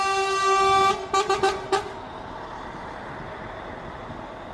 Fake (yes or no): no